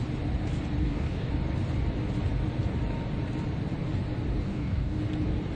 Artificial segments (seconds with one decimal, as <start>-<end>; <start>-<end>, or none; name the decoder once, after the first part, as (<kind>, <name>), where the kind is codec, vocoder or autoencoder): 0.8-1.3 (codec, DAC); 4.5-5.0